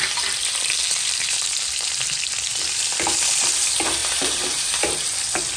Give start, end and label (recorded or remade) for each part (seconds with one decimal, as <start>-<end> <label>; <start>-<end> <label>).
0.0-0.8 recorded; 0.8-1.9 remade; 1.9-4.0 recorded; 4.0-4.7 remade; 4.7-5.6 recorded